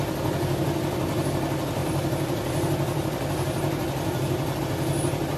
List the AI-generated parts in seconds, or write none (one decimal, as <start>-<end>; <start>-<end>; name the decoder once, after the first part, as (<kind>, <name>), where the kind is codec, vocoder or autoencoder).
1.8-4.6 (vocoder, BigVGAN v2)